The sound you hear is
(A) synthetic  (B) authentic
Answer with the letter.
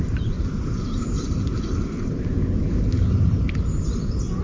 B